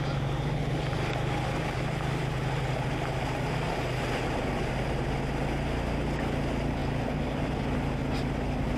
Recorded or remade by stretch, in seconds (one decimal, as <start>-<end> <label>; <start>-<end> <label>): 0.0-6.8 recorded; 6.8-7.6 remade; 7.6-8.8 recorded